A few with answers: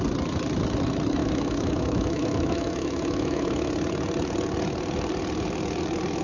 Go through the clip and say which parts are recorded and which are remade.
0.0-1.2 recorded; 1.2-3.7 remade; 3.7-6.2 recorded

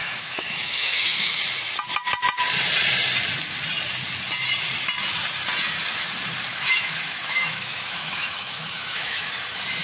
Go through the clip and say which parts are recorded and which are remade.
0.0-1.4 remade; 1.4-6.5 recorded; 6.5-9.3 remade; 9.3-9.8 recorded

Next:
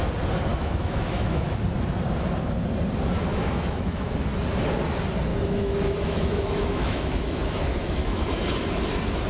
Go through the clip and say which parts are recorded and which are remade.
0.0-0.5 recorded; 0.5-1.6 remade; 1.6-3.3 recorded; 3.3-4.1 remade; 4.1-5.3 recorded; 5.3-8.3 remade; 8.3-9.3 recorded

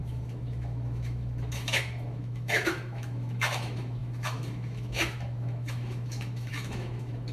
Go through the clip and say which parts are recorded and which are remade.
0.0-7.3 remade

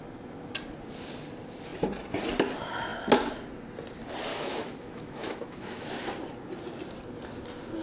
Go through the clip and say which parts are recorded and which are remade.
0.0-4.3 recorded; 4.3-5.9 remade; 5.9-7.8 recorded